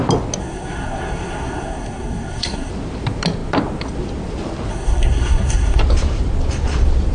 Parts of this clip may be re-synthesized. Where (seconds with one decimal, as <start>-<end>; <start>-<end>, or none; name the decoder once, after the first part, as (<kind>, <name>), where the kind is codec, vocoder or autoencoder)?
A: 0.4-2.7 (codec, SNAC); 4.7-5.8